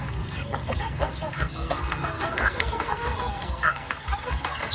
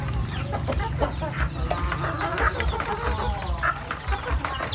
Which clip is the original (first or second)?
second